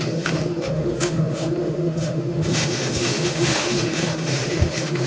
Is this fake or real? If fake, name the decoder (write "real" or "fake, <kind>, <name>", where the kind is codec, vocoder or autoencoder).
fake, autoencoder, DAC-VAE